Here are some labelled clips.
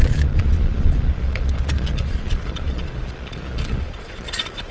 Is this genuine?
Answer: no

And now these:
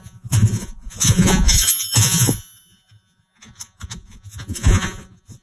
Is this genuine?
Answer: no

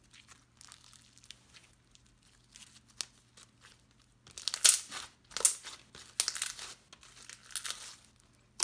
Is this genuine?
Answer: yes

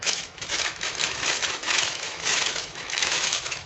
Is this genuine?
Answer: no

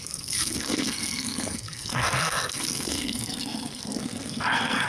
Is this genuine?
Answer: no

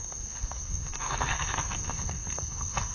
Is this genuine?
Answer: no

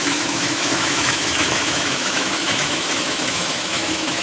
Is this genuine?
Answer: no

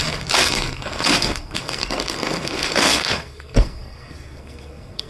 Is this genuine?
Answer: no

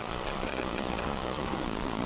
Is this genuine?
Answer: no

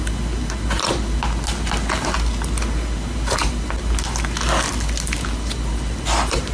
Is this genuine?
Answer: yes